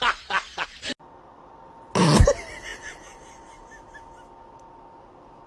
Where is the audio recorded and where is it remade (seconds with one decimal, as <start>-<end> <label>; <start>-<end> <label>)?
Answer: 0.0-5.5 recorded

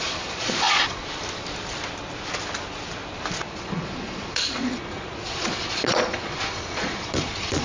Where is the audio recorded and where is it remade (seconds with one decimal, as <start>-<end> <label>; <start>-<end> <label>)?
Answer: 0.0-1.0 remade; 1.0-3.5 recorded; 3.5-7.6 remade